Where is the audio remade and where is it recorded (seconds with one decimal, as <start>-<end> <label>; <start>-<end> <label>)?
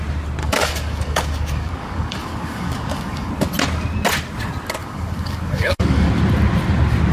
0.0-0.4 recorded; 0.4-3.3 remade; 3.3-4.8 recorded; 4.8-6.1 remade; 6.1-7.1 recorded